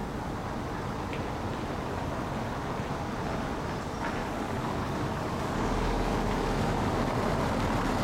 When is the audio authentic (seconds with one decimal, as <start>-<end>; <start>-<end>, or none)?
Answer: 0.0-4.2; 7.0-8.0